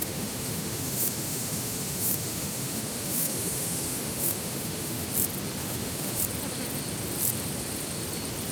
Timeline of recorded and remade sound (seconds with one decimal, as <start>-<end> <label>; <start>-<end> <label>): 0.0-5.1 remade; 5.1-5.6 recorded; 5.6-6.2 remade; 6.2-8.5 recorded